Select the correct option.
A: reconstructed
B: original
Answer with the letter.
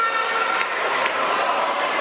A